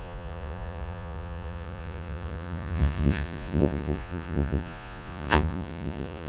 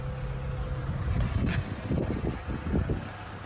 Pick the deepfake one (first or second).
first